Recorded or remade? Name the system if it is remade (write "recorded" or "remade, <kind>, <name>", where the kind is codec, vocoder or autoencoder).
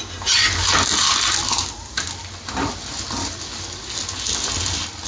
recorded